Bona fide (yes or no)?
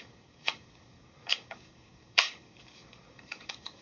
no